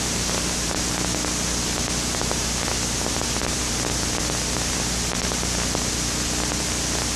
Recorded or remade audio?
recorded